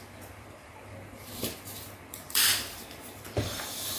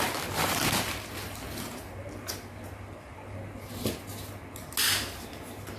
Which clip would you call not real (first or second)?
first